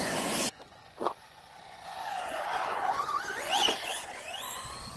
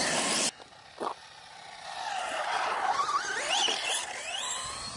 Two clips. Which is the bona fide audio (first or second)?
second